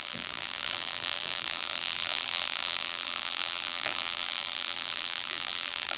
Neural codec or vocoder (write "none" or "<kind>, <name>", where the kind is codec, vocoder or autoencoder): vocoder, BigVGAN v2